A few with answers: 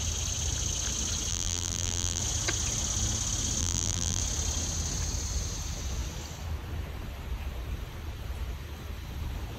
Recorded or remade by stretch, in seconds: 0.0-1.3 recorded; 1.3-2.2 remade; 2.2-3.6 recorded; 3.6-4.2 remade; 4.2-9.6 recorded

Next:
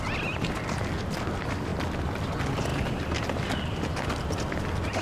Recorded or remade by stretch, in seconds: 0.0-5.0 recorded

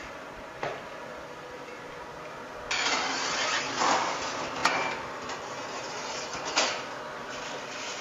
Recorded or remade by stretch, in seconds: 0.0-8.0 recorded